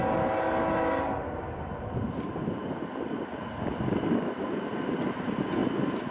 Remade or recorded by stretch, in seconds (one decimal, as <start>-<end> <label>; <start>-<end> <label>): 0.0-1.2 recorded; 1.2-4.7 remade; 4.7-5.6 recorded; 5.6-6.1 remade